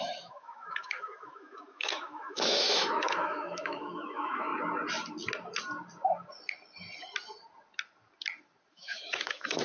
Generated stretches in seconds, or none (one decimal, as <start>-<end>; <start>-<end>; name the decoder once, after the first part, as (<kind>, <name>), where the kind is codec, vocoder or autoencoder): 0.0-4.5 (autoencoder, DAC-VAE); 8.7-9.6